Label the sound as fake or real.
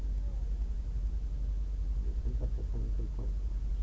real